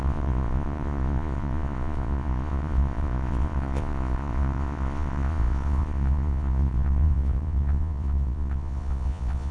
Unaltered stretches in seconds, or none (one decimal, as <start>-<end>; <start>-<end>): none